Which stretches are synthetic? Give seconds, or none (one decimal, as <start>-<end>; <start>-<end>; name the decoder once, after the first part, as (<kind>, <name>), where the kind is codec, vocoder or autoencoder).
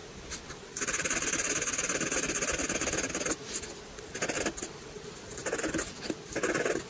none